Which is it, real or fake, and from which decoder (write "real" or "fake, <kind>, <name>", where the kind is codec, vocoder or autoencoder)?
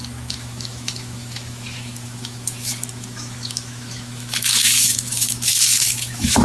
fake, autoencoder, DAC-VAE